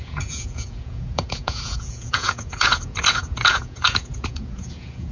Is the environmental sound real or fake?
fake